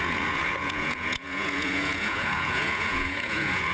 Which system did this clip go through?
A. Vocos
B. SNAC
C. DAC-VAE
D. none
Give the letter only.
A